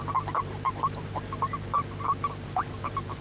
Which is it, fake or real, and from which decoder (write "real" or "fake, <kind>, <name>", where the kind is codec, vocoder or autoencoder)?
fake, vocoder, BigVGAN v2